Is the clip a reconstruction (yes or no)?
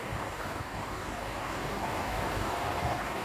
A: yes